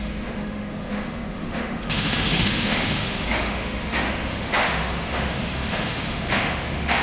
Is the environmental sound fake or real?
fake